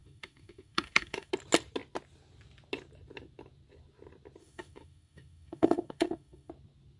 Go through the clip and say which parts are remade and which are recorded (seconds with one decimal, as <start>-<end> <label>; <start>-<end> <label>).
0.0-1.3 remade; 1.3-4.4 recorded; 4.4-6.5 remade; 6.5-7.0 recorded